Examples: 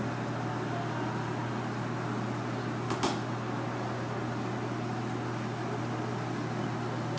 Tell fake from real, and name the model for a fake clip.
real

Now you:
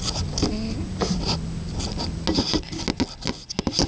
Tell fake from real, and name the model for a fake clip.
real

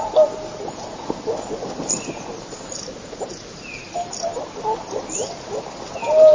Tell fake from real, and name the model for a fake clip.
real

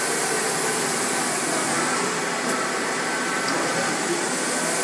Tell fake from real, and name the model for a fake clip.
real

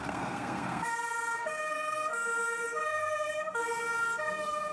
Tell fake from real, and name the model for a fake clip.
fake, codec, SNAC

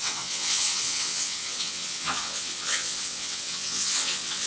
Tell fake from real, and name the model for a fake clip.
fake, vocoder, WaveNeXt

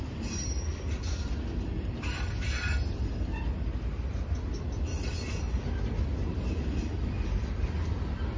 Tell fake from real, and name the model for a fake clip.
real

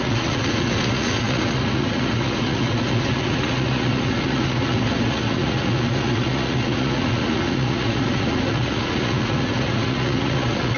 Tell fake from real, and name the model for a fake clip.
fake, vocoder, Vocos